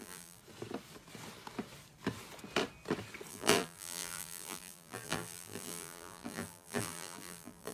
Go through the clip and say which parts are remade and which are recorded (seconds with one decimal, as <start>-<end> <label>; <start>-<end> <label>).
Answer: 0.0-0.4 remade; 0.4-3.3 recorded; 3.3-7.7 remade